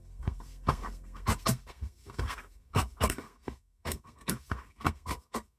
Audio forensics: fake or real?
fake